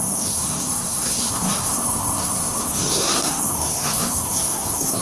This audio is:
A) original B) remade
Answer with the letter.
B